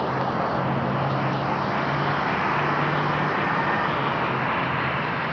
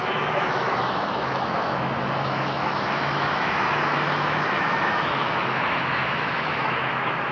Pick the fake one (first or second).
second